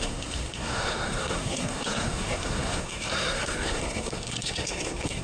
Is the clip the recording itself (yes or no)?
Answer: no